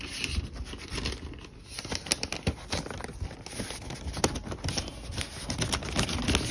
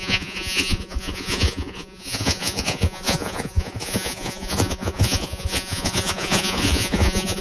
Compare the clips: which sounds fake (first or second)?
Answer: second